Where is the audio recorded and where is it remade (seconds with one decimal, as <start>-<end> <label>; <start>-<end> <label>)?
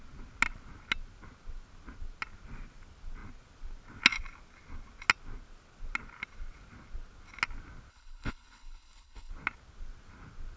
0.0-7.9 recorded; 7.9-9.3 remade; 9.3-10.6 recorded